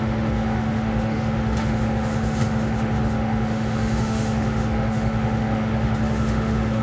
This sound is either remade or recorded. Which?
remade